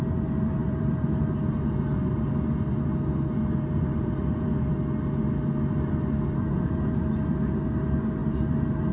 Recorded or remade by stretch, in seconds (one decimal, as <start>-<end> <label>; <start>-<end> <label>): 0.0-0.6 recorded; 0.6-1.5 remade; 1.5-3.9 recorded; 3.9-4.7 remade; 4.7-8.9 recorded